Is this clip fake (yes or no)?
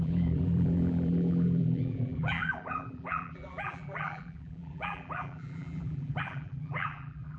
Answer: yes